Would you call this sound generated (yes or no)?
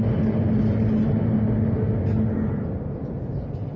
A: no